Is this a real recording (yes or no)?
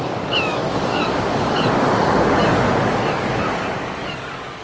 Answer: no